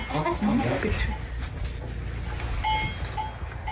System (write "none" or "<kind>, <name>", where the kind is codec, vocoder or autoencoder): none